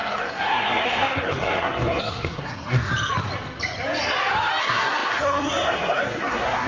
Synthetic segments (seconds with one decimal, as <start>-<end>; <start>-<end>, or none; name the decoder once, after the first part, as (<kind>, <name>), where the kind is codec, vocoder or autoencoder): 0.0-2.9 (codec, SNAC); 4.6-6.7